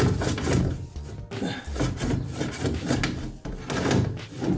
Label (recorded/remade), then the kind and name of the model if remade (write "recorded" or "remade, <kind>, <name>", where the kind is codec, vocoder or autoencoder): recorded